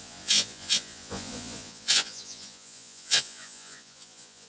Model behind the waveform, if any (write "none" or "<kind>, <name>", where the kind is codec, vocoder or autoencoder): vocoder, Vocos